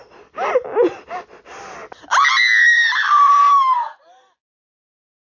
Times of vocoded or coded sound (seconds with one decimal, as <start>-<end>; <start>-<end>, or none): 3.3-4.0